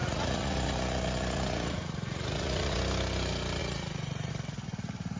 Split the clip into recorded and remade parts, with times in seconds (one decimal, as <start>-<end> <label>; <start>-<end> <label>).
0.0-2.8 remade; 2.8-3.6 recorded; 3.6-4.3 remade; 4.3-5.2 recorded